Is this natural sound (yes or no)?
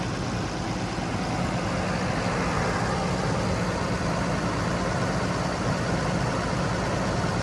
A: yes